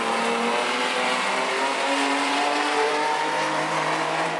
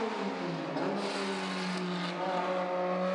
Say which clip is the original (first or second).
second